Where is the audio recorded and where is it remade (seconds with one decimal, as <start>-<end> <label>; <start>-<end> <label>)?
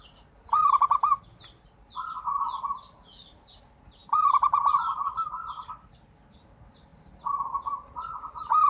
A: 0.0-4.0 recorded; 4.0-5.7 remade; 5.7-8.7 recorded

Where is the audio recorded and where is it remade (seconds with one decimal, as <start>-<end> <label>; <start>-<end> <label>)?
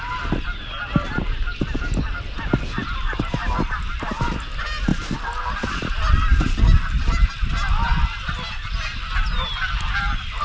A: 0.0-2.8 recorded; 2.8-3.3 remade; 3.3-10.4 recorded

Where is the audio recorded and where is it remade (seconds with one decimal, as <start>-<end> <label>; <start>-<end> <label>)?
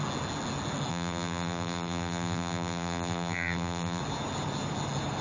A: 0.0-0.9 recorded; 0.9-4.0 remade; 4.0-5.2 recorded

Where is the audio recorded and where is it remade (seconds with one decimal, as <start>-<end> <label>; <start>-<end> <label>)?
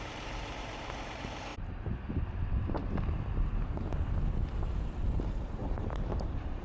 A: 0.0-1.5 remade; 1.5-5.3 recorded; 5.3-6.6 remade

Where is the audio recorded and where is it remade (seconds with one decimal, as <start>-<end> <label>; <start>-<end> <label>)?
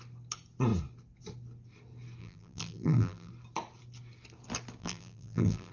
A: 0.0-2.2 recorded; 2.2-3.3 remade; 3.3-4.8 recorded; 4.8-5.7 remade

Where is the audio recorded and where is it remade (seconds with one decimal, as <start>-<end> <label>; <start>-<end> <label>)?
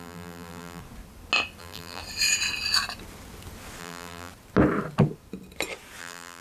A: 0.0-0.8 remade; 0.8-1.6 recorded; 1.6-2.0 remade; 2.0-3.8 recorded; 3.8-4.3 remade; 4.3-6.0 recorded; 6.0-6.4 remade